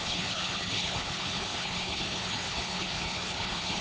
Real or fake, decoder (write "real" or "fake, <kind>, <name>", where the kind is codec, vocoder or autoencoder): fake, codec, HILCodec